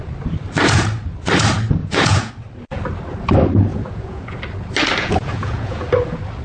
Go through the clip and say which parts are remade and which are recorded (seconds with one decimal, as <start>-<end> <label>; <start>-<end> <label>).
0.0-1.8 recorded; 1.8-2.3 remade; 2.3-3.7 recorded; 3.7-4.4 remade; 4.4-5.0 recorded; 5.0-5.9 remade; 5.9-6.4 recorded